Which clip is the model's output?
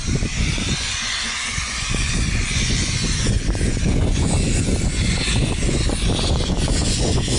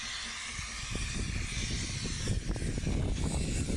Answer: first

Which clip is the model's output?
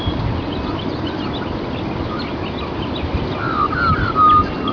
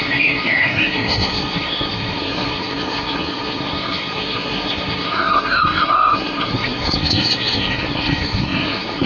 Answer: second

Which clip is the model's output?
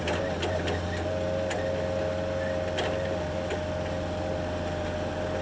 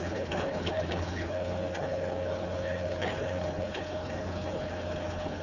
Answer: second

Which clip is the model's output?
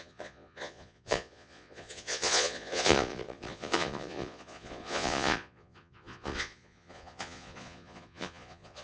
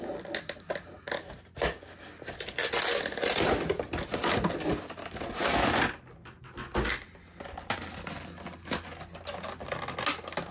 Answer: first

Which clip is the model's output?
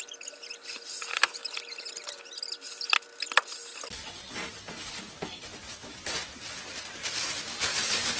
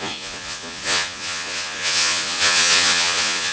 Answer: second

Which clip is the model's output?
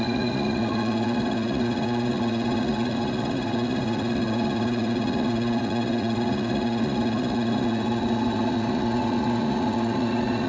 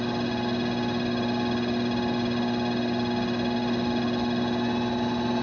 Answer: first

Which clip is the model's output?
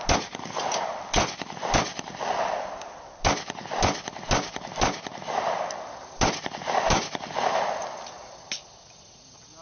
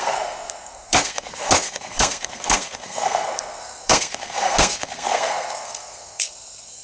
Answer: second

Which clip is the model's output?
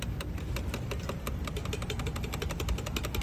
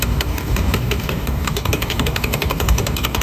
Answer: second